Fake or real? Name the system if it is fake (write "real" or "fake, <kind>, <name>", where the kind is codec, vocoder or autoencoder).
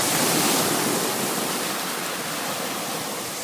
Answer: fake, vocoder, BigVGAN v2